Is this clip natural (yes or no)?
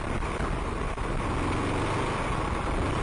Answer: yes